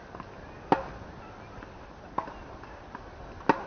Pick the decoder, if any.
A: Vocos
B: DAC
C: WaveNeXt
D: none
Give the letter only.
D